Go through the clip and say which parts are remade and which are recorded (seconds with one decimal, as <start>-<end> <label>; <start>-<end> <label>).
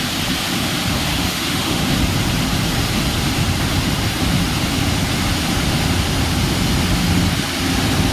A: 0.0-1.1 recorded; 1.1-1.8 remade; 1.8-8.1 recorded